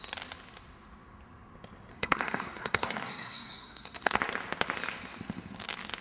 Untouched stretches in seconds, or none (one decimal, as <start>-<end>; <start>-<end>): 0.0-1.9; 4.2-6.0